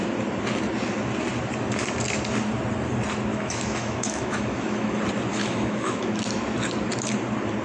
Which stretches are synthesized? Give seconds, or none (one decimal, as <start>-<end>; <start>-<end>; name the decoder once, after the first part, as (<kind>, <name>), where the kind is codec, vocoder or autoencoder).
3.3-5.0 (autoencoder, DAC-VAE); 5.4-6.2